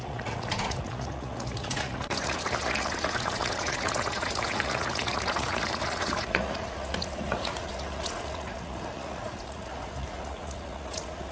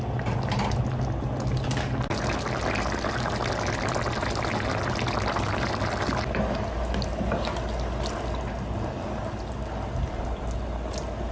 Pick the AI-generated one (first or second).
first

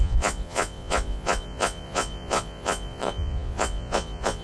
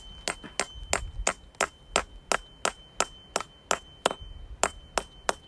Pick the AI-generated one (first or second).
first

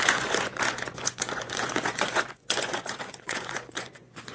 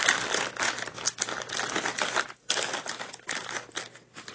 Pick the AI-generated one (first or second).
first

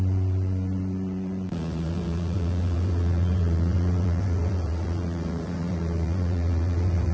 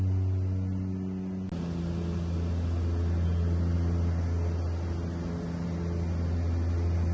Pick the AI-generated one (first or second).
first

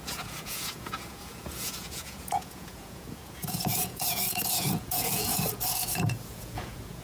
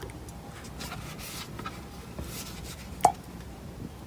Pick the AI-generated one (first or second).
first